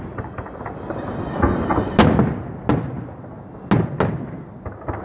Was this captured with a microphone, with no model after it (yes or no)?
yes